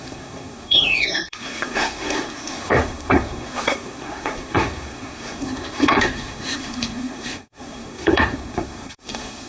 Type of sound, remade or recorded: remade